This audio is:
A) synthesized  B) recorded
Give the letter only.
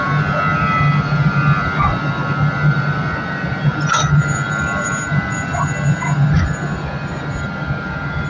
B